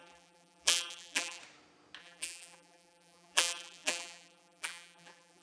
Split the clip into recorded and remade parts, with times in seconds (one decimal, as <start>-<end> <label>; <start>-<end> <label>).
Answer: 0.0-1.4 remade; 1.4-2.0 recorded; 2.0-5.4 remade